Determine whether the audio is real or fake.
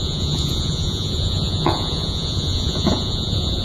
fake